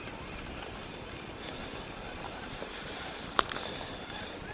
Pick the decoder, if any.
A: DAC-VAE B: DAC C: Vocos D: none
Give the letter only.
D